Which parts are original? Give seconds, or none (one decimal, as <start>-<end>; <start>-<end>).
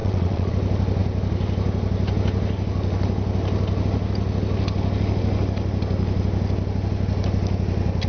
0.5-8.1